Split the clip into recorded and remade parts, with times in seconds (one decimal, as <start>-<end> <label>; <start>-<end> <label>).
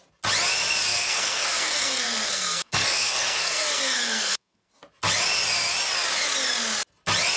0.0-0.9 recorded; 0.9-4.7 remade; 4.7-7.4 recorded